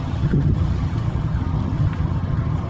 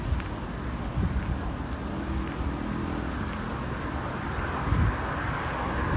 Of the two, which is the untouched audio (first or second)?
second